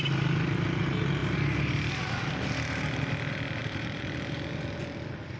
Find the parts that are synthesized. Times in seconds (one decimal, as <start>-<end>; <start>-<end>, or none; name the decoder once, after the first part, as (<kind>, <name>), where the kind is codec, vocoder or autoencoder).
3.6-4.5 (vocoder, BigVGAN v2)